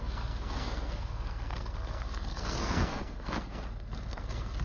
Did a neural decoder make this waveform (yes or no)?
yes